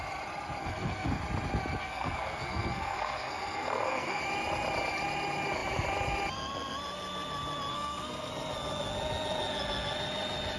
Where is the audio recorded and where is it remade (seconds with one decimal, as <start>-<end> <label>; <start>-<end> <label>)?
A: 0.0-0.6 recorded; 0.6-1.2 remade; 1.2-1.8 recorded; 1.8-4.2 remade; 4.2-7.7 recorded; 7.7-8.3 remade; 8.3-10.6 recorded